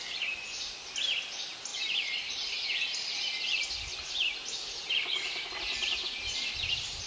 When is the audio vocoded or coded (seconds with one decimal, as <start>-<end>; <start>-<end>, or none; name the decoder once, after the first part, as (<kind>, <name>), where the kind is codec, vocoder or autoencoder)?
none